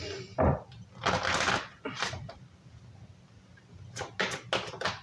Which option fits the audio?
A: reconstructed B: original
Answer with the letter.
B